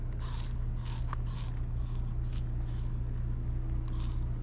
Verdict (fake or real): real